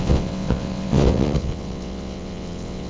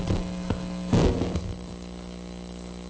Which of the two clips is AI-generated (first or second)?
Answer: first